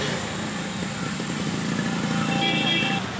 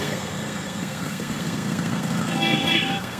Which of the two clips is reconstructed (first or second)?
second